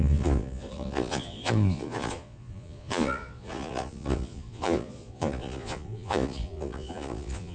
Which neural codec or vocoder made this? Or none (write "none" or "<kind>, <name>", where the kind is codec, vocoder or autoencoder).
vocoder, Vocos